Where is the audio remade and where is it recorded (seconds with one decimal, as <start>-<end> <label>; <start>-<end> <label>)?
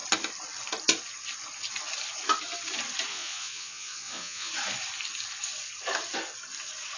0.0-3.1 recorded; 3.1-4.5 remade; 4.5-7.0 recorded